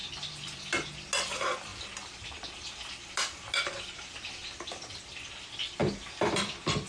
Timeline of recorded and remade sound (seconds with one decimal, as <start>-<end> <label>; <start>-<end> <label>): 0.0-0.6 remade; 0.6-4.4 recorded; 4.4-5.3 remade; 5.3-5.8 recorded; 5.8-6.5 remade; 6.5-6.9 recorded